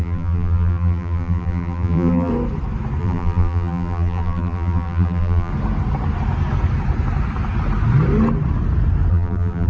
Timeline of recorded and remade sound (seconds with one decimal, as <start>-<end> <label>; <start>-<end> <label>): 0.0-2.3 remade; 2.3-3.0 recorded; 3.0-5.5 remade; 5.5-9.1 recorded; 9.1-9.7 remade